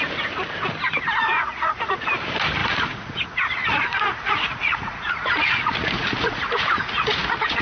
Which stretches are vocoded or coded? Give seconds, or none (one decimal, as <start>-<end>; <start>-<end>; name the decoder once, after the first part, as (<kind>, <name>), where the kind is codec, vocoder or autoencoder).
1.2-2.1 (vocoder, Vocos); 2.6-7.6

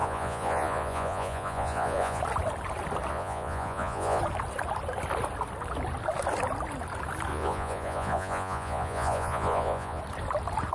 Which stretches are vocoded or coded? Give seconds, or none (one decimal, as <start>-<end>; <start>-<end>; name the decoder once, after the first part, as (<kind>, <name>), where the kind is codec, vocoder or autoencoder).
0.0-2.2 (vocoder, Vocos); 3.1-4.2; 7.3-10.0

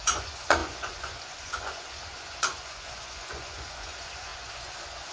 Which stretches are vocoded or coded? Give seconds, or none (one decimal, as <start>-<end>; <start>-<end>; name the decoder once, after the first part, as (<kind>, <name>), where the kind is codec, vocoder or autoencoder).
0.0-5.1 (vocoder, Vocos)

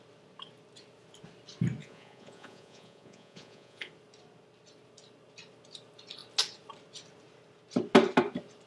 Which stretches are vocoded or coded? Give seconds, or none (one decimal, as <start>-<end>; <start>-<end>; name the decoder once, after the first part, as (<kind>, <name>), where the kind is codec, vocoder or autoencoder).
1.8-3.9 (vocoder, Vocos)

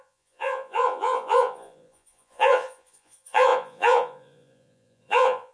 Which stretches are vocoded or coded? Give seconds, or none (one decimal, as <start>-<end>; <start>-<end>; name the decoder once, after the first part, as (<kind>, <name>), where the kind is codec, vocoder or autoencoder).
0.0-5.5 (vocoder, Vocos)

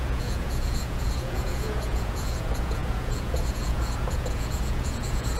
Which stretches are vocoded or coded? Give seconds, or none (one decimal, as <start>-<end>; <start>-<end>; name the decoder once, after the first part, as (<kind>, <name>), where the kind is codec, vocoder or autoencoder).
0.0-5.4 (vocoder, Vocos)